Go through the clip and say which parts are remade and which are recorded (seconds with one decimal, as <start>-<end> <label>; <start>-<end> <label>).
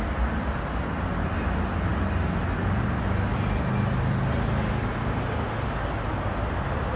0.0-7.0 recorded